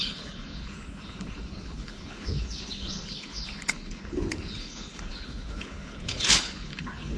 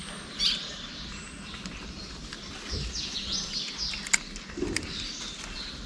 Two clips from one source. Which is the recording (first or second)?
second